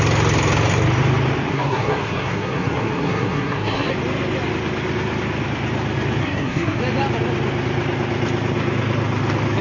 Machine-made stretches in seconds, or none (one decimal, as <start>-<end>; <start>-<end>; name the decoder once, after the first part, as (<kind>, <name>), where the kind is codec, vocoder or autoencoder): 1.5-3.9 (codec, SNAC); 6.2-6.8